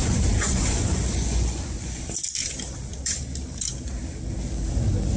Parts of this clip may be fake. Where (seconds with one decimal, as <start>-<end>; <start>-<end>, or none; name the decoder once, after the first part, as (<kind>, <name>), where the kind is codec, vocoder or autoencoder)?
0.0-2.1 (vocoder, Vocos)

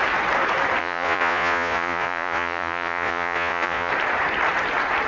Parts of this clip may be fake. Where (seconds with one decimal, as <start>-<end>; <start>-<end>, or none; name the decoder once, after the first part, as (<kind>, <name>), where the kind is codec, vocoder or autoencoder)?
0.8-3.9 (vocoder, Vocos)

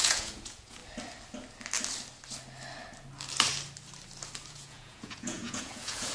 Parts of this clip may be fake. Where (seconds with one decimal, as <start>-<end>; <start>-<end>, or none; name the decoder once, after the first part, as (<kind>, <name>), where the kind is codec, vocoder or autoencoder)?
0.0-0.8 (vocoder, Vocos); 4.5-6.1

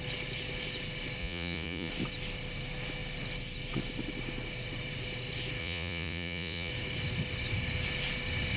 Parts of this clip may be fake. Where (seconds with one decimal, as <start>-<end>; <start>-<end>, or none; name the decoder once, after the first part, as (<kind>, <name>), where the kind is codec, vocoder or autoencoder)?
1.2-1.9 (vocoder, Vocos); 5.6-6.7